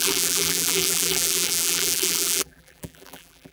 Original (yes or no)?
no